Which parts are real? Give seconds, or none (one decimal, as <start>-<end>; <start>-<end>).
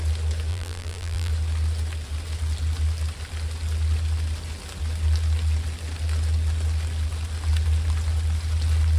0.0-0.5; 1.3-9.0